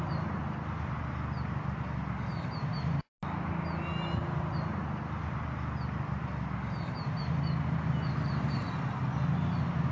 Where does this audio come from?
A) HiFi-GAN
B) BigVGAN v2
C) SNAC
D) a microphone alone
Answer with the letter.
D